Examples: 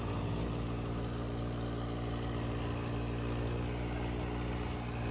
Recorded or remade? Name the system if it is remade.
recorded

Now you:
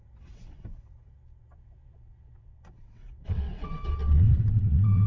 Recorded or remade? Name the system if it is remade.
remade, vocoder, WaveNeXt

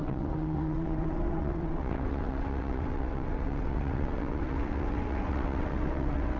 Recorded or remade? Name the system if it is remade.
remade, vocoder, WaveNeXt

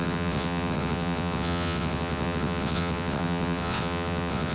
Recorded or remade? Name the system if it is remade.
remade, vocoder, WaveNeXt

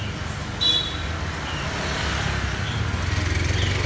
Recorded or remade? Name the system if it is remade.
recorded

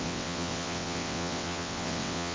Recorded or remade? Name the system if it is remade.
remade, vocoder, WaveNeXt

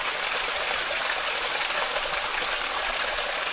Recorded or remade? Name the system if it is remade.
recorded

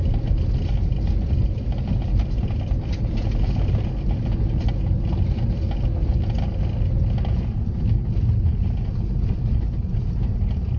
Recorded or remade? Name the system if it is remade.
recorded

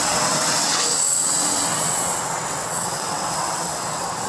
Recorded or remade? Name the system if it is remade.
remade, vocoder, WaveNeXt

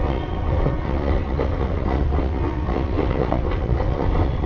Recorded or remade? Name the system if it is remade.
remade, vocoder, WaveNeXt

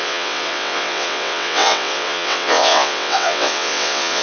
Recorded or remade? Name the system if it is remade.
remade, vocoder, WaveNeXt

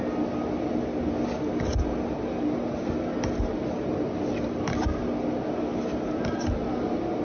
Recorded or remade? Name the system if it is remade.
recorded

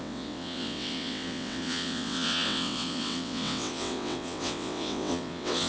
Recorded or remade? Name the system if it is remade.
remade, vocoder, WaveNeXt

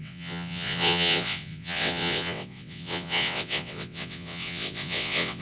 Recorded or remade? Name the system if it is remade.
remade, vocoder, WaveNeXt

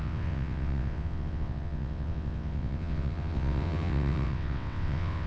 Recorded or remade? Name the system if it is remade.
remade, vocoder, WaveNeXt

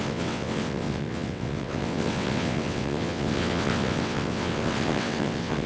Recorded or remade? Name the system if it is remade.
remade, vocoder, WaveNeXt